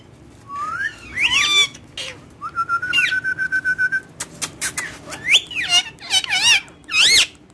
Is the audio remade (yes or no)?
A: no